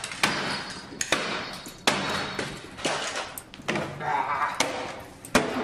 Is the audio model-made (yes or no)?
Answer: no